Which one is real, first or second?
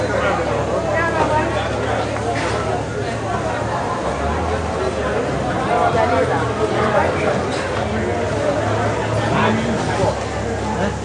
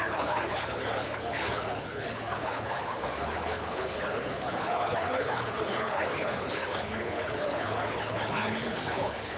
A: first